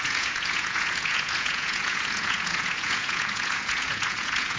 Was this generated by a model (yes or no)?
yes